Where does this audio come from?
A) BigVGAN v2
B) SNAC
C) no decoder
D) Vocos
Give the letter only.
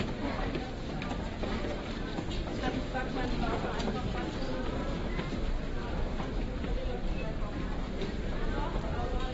A